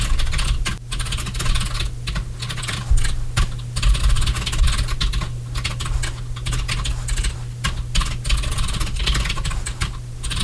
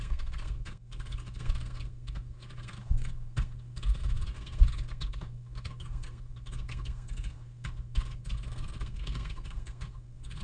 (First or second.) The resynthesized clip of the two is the second